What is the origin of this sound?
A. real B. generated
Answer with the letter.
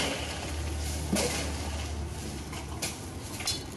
A